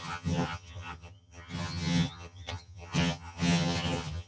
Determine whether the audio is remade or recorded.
remade